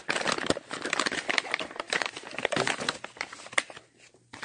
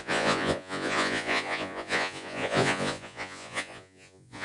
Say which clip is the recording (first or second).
first